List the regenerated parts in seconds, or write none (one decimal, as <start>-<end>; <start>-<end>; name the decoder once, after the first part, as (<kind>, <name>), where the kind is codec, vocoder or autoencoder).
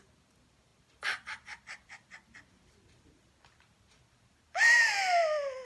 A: none